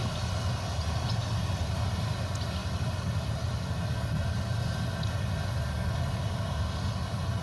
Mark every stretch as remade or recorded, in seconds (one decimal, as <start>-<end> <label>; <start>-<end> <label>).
0.0-7.4 recorded